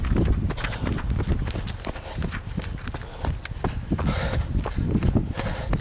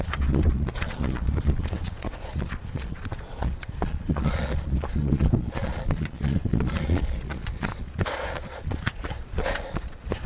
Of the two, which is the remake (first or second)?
second